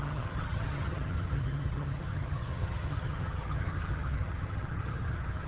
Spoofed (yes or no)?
yes